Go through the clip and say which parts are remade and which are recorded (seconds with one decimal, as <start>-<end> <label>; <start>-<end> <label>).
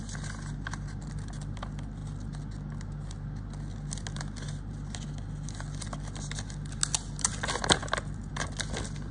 0.0-9.1 recorded